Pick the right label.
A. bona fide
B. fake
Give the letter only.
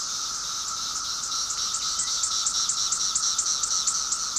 A